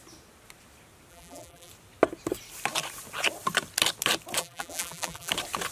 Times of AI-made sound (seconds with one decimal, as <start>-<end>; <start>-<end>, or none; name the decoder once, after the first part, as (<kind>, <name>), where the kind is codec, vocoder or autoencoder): 1.1-1.7 (vocoder, BigVGAN v2); 4.4-5.3